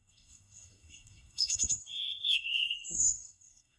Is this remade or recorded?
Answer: remade